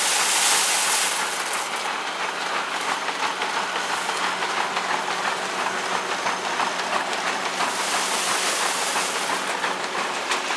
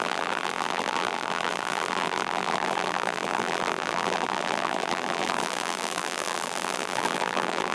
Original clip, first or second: first